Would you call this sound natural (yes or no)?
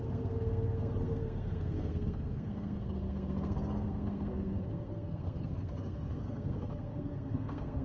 no